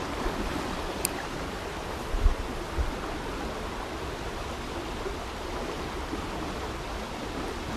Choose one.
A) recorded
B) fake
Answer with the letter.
A